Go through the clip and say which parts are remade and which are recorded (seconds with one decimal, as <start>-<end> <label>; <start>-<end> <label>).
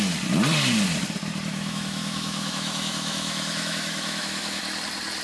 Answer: 0.0-1.5 recorded; 1.5-4.6 remade; 4.6-5.2 recorded